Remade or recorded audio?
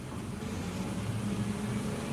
recorded